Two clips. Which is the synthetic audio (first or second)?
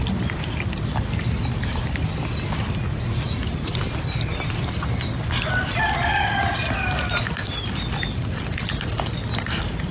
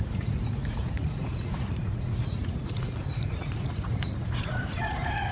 second